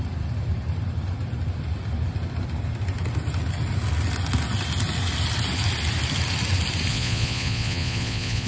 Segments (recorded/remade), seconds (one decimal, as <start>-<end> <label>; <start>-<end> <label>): 0.0-6.9 recorded; 6.9-8.5 remade